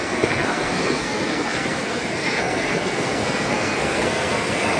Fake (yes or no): yes